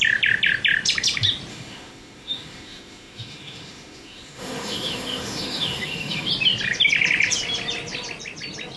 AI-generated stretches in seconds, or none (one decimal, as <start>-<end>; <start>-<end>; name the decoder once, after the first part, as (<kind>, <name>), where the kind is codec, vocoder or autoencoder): 1.5-6.3 (autoencoder, DAC-VAE)